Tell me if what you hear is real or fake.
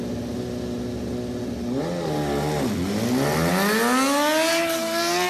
real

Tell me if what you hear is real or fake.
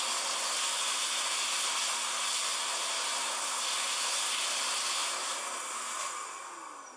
real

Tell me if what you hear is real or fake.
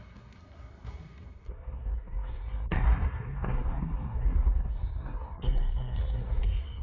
fake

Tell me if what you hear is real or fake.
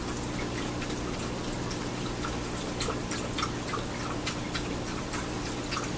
real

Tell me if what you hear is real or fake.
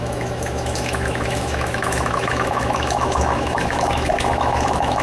fake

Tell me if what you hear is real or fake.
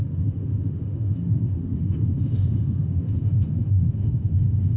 fake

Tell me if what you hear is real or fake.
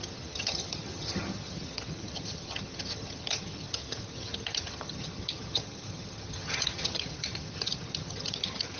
fake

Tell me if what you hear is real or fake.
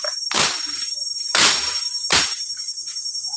real